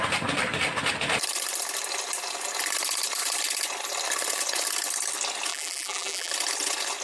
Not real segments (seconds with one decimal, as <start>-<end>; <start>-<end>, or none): 5.5-6.3